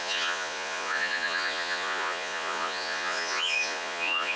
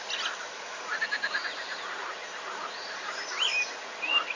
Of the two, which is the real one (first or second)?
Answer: second